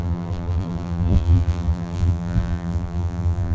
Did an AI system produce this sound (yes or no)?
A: yes